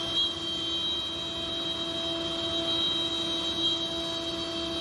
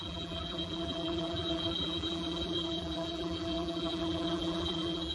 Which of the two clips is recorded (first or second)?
first